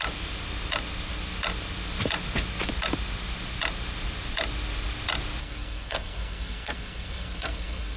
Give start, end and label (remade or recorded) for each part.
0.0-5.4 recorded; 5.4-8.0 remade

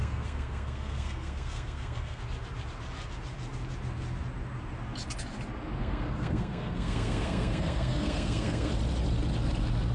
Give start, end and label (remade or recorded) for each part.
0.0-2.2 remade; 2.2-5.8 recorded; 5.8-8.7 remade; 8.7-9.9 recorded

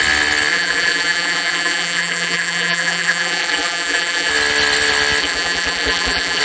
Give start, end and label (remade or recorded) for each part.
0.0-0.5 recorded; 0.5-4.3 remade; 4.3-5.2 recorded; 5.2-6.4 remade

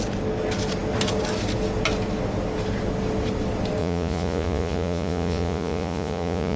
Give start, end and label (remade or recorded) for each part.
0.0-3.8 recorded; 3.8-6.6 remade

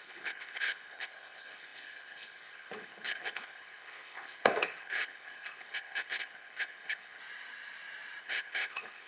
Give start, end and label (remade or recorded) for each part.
0.0-7.2 remade; 7.2-8.2 recorded; 8.2-9.1 remade

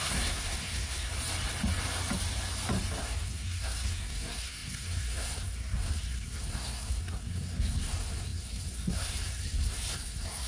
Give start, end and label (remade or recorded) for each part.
0.0-1.1 remade; 1.1-3.0 recorded; 3.0-10.5 remade

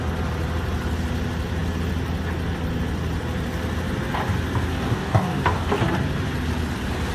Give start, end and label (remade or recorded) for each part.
0.0-4.7 recorded; 4.7-5.7 remade; 5.7-7.1 recorded